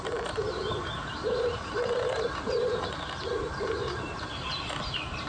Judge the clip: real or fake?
fake